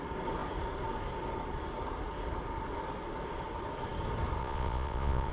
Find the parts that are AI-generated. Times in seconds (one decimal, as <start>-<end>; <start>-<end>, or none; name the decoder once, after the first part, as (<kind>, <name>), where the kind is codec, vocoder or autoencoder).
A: 4.4-5.3 (vocoder, Vocos)